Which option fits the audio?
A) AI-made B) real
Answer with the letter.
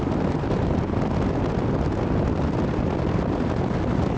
B